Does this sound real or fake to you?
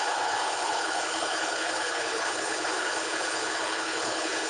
fake